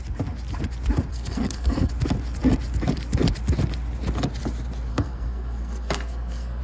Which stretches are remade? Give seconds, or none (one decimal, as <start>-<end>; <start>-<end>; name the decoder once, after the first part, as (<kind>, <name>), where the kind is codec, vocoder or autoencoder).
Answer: 1.1-1.9 (codec, SNAC); 4.9-6.6